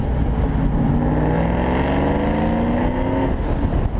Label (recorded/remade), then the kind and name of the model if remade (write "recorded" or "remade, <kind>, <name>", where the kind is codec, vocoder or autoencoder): recorded